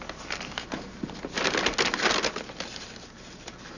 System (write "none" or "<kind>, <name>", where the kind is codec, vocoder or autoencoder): none